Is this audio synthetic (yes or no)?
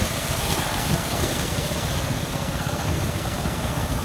yes